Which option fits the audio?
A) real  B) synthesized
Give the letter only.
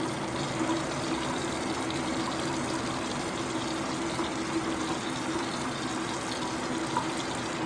A